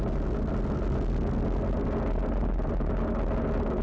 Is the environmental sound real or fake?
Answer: real